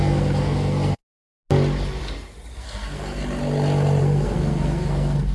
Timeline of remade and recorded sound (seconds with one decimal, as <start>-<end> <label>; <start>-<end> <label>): 0.0-1.0 remade; 1.0-2.5 recorded; 2.5-3.2 remade; 3.2-4.0 recorded; 4.0-5.3 remade